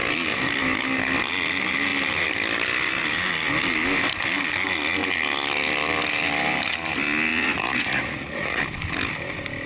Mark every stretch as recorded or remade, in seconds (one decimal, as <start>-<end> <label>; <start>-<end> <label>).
0.0-7.3 recorded; 7.3-8.6 remade; 8.6-9.7 recorded

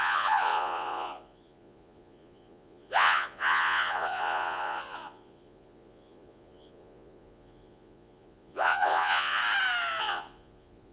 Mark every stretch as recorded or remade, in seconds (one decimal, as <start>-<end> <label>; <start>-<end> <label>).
0.0-9.4 remade; 9.4-10.0 recorded; 10.0-10.9 remade

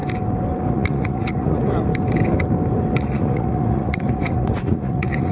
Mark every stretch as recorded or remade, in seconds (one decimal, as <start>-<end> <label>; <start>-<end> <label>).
0.0-0.7 recorded; 0.7-1.9 remade; 1.9-3.0 recorded; 3.0-5.3 remade

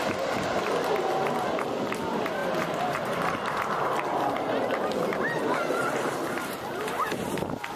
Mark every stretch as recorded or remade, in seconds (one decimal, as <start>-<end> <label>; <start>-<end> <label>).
0.0-7.8 recorded

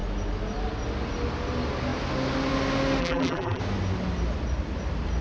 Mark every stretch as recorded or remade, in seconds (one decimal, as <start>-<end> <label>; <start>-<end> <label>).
0.0-3.0 recorded; 3.0-3.6 remade; 3.6-5.2 recorded

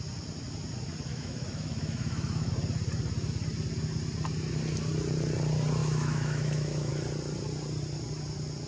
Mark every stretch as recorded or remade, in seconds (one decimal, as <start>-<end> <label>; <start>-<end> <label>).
0.0-1.1 recorded; 1.1-2.5 remade; 2.5-5.8 recorded; 5.8-6.9 remade; 6.9-8.7 recorded

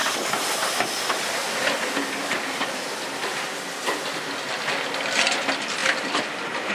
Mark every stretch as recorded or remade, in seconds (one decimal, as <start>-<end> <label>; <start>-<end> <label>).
0.0-1.2 remade; 1.2-5.8 recorded; 5.8-6.7 remade